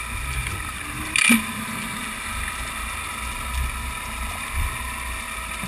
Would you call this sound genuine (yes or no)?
yes